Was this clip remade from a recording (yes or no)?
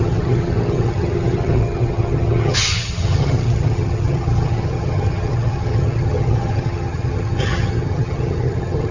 yes